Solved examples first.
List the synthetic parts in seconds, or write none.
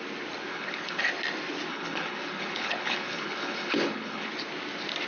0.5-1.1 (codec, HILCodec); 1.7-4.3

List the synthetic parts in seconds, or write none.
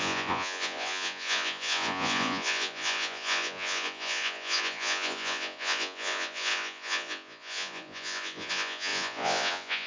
0.0-9.9 (vocoder, Vocos)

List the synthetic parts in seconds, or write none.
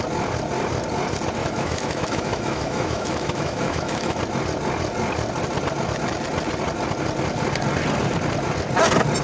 1.4-4.2 (autoencoder, DAC-VAE)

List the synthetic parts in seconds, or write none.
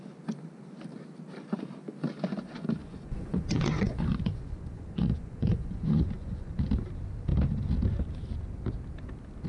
2.8-6.6 (vocoder, Vocos)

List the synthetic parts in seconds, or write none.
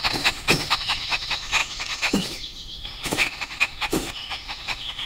0.0-5.1 (autoencoder, DAC-VAE)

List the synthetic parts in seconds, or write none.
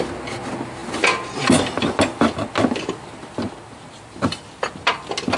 none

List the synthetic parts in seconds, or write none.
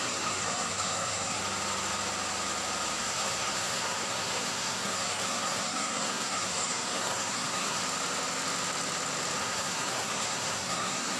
0.0-1.4 (codec, SNAC); 3.0-7.8; 9.4-11.2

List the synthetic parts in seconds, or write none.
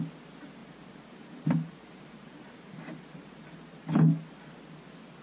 0.6-3.7 (vocoder, BigVGAN v2)